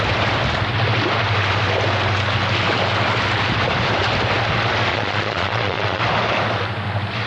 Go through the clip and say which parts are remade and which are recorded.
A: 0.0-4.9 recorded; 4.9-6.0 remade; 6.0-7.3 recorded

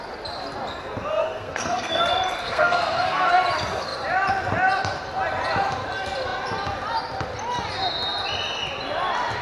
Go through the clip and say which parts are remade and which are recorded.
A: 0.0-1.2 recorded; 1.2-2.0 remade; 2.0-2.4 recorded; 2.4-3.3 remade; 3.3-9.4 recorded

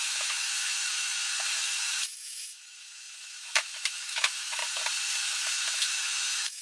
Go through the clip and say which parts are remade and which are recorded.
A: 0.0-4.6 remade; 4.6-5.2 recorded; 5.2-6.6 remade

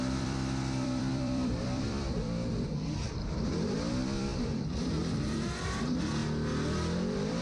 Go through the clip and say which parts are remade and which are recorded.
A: 0.0-6.2 remade; 6.2-7.4 recorded

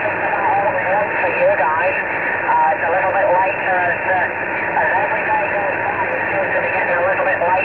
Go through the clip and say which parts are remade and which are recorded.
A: 0.0-7.6 recorded